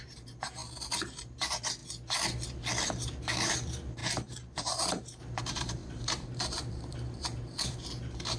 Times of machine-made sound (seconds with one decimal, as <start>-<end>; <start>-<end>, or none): 0.0-0.6; 1.2-1.8; 2.9-8.4